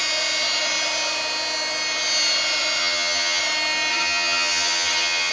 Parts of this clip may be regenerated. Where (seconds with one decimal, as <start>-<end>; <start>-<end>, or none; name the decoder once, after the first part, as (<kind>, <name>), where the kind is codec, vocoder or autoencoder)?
2.8-3.4 (vocoder, HiFi-GAN); 3.9-5.3